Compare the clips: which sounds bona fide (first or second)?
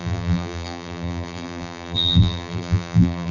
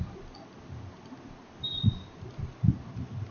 second